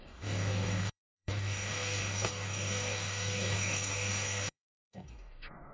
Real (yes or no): no